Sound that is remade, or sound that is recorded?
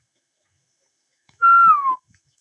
remade